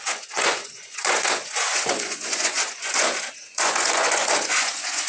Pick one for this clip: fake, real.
fake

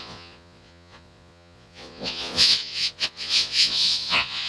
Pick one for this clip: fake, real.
fake